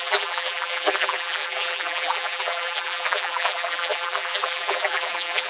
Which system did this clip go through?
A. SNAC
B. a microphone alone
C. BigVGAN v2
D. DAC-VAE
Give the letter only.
C